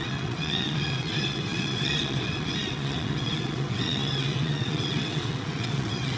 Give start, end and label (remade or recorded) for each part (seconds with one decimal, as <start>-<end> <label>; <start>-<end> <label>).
0.0-6.2 remade